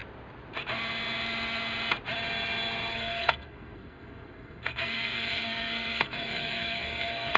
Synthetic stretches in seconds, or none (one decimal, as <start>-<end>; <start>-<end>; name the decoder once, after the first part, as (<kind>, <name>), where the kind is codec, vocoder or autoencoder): 2.9-7.4 (codec, SNAC)